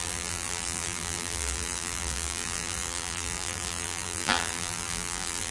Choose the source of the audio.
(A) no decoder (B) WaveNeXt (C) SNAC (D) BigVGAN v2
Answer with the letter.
D